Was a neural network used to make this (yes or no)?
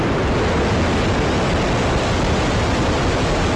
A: no